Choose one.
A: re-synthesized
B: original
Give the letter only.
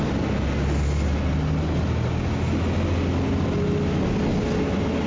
B